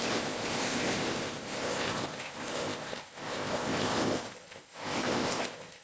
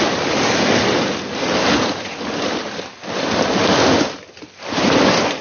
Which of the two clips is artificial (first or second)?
first